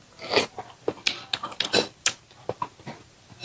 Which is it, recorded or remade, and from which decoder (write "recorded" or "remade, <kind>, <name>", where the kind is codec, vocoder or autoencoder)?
recorded